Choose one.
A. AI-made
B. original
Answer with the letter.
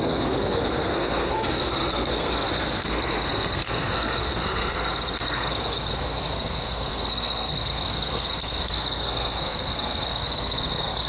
A